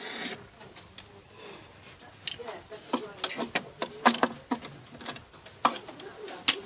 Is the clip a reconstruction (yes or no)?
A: no